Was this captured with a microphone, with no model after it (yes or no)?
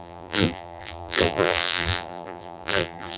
no